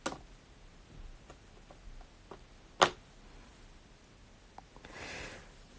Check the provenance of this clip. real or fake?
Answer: real